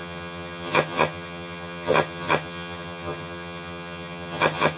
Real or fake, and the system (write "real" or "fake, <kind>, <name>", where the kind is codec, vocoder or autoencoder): fake, vocoder, HiFi-GAN